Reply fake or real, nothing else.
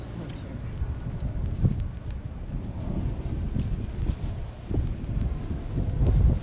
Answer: real